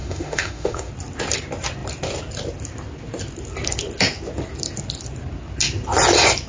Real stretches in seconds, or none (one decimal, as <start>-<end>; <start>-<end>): 0.9-6.5